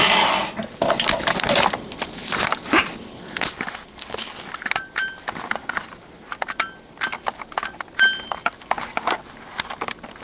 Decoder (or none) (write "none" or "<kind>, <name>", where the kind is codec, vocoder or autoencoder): none